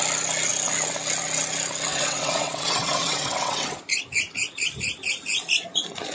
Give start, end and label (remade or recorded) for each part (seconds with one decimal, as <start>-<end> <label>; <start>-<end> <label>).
0.0-1.9 recorded; 1.9-3.8 remade; 3.8-6.1 recorded

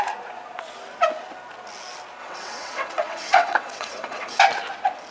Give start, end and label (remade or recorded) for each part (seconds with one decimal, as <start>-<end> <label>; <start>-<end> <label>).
0.0-2.2 recorded; 2.2-4.4 remade; 4.4-5.1 recorded

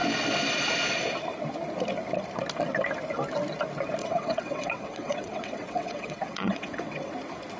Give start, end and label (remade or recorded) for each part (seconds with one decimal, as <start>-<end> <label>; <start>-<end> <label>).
0.0-4.0 recorded; 4.0-7.1 remade; 7.1-7.6 recorded

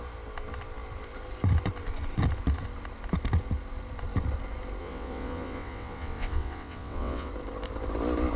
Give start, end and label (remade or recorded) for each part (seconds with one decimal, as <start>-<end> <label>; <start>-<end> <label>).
0.0-4.8 recorded; 4.8-7.3 remade; 7.3-8.4 recorded

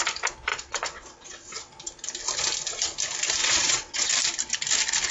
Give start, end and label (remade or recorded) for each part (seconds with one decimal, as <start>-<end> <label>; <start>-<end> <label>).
0.0-0.5 recorded; 0.5-1.7 remade; 1.7-3.4 recorded; 3.4-4.1 remade; 4.1-5.1 recorded

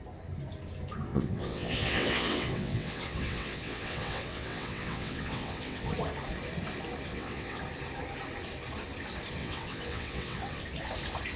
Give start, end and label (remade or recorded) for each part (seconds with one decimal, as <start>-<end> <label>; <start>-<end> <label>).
0.0-1.1 recorded; 1.1-5.9 remade; 5.9-7.1 recorded; 7.1-7.6 remade; 7.6-9.4 recorded; 9.4-10.6 remade; 10.6-11.4 recorded